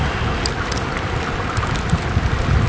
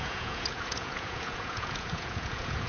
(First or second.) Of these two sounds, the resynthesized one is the second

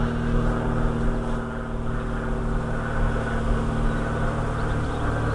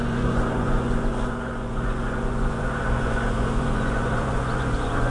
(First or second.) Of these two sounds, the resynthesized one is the second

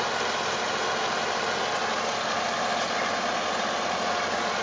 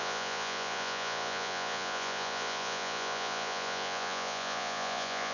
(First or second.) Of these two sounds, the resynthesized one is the second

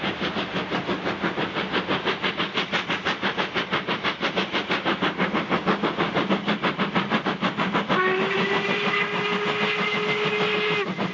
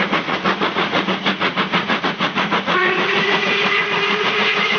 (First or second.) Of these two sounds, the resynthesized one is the second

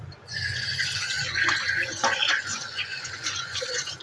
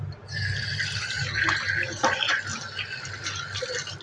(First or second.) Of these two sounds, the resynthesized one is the first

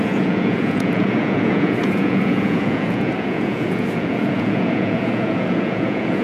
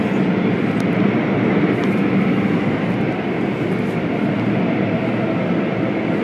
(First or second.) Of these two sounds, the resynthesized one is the first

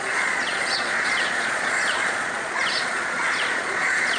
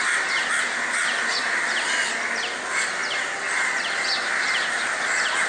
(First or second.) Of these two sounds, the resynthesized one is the first